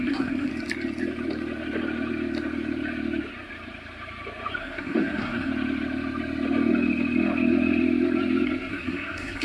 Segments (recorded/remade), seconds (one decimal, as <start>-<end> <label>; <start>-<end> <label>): 0.0-0.5 remade; 0.5-4.6 recorded; 4.6-5.5 remade; 5.5-8.7 recorded; 8.7-9.4 remade